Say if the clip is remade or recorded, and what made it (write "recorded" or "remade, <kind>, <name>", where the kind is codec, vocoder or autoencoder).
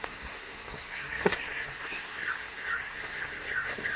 remade, codec, SNAC